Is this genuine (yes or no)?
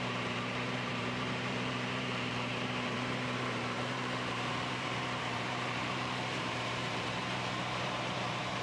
no